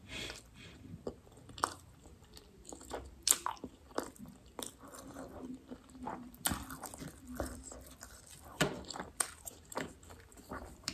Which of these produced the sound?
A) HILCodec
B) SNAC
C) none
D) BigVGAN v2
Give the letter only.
D